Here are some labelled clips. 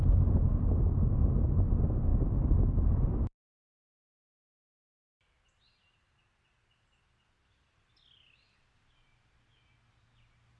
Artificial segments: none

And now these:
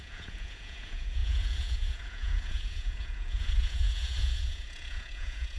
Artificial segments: 0.0-5.6 (vocoder, Vocos)

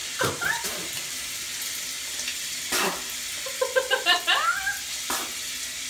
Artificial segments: 0.0-1.7 (vocoder, BigVGAN v2)